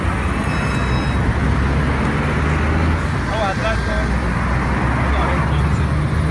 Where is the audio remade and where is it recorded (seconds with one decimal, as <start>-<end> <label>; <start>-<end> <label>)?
0.0-6.3 recorded